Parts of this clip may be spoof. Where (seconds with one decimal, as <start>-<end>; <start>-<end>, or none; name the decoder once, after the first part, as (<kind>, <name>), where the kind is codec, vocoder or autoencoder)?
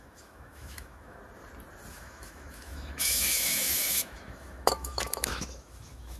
0.0-1.2 (autoencoder, DAC-VAE); 1.9-6.2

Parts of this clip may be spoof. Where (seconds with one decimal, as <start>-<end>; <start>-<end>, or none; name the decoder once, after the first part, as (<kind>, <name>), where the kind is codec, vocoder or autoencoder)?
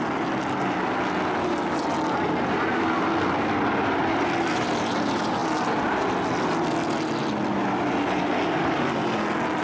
none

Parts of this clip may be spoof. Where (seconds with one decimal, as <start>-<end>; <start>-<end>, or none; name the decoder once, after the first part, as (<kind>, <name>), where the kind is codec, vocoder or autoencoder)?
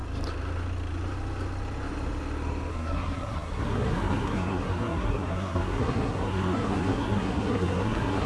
2.7-8.3 (codec, SNAC)